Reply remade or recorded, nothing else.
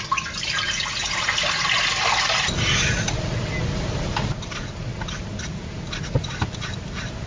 recorded